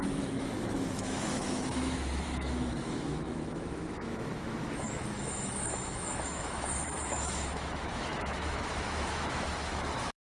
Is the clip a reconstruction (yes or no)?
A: yes